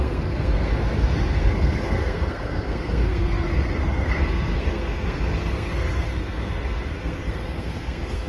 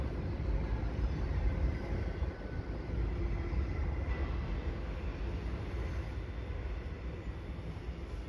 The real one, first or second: second